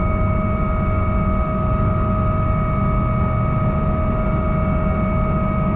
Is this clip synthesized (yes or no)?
no